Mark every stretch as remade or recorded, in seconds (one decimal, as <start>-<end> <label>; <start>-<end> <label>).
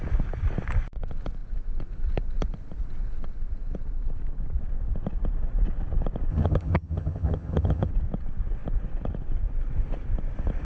0.0-6.3 recorded; 6.3-7.9 remade; 7.9-10.6 recorded